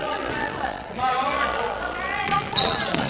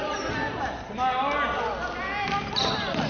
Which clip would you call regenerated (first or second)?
first